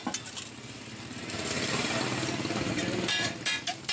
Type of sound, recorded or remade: recorded